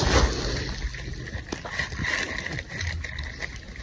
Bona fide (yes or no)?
yes